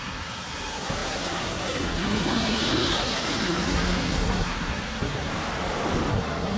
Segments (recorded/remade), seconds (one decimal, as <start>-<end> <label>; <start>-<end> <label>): 0.0-5.3 remade; 5.3-6.1 recorded; 6.1-6.6 remade

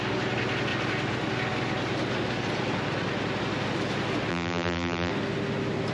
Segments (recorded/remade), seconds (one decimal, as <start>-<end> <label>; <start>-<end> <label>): 0.0-4.3 recorded; 4.3-5.1 remade; 5.1-5.9 recorded

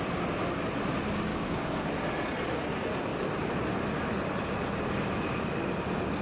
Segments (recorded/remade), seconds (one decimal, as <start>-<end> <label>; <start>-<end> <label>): 0.0-1.3 recorded; 1.3-1.9 remade; 1.9-6.2 recorded

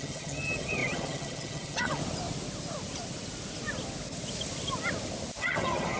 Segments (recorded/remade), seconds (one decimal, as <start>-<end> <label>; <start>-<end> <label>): 0.0-2.0 remade; 2.0-5.4 recorded; 5.4-6.0 remade